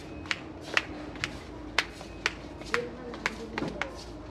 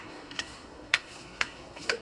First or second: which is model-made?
second